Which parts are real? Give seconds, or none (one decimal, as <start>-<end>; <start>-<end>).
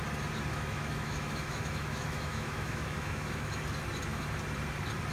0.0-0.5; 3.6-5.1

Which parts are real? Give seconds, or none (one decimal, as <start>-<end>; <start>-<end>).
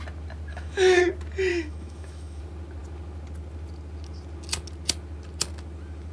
0.0-0.5; 1.0-1.5; 2.4-6.1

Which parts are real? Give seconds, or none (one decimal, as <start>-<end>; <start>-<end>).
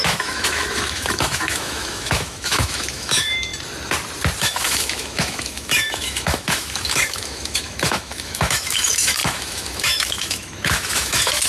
3.5-4.4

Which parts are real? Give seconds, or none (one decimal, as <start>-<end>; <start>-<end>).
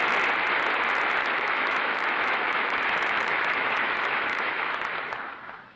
0.0-1.2; 4.7-5.8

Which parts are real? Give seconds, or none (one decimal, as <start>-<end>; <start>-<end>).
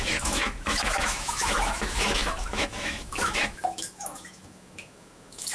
none